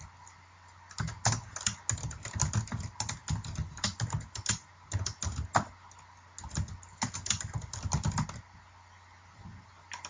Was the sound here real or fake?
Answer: real